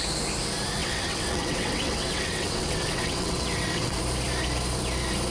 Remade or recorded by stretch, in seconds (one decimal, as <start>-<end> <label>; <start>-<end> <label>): 0.0-0.8 recorded; 0.8-4.0 remade; 4.0-5.3 recorded